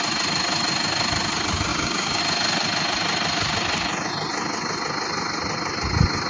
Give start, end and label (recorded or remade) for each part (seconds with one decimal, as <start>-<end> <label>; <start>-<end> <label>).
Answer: 0.0-1.7 recorded; 1.7-2.2 remade; 2.2-6.3 recorded